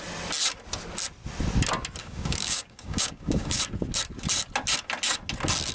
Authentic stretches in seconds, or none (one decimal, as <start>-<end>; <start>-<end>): 0.0-2.0; 3.6-5.7